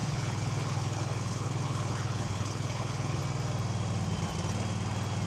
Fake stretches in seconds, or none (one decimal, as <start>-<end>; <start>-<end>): 0.0-3.2